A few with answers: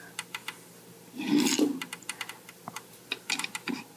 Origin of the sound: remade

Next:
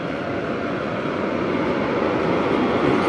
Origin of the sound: remade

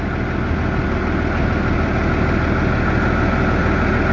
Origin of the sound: recorded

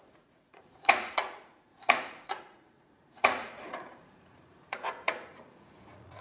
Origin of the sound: remade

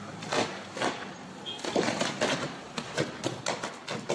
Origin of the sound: recorded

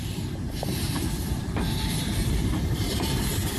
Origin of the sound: remade